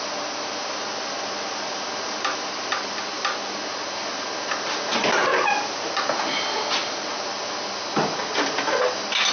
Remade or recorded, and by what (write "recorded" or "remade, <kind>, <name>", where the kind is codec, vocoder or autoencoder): recorded